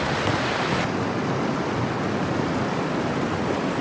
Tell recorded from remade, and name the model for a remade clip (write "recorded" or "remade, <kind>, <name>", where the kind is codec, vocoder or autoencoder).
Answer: recorded